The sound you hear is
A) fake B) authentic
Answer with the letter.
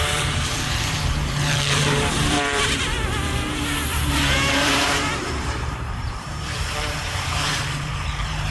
A